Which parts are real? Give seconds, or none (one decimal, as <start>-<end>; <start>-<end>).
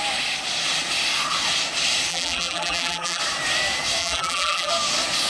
0.0-2.1; 3.2-4.0; 4.7-5.3